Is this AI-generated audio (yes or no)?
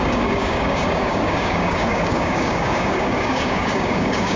yes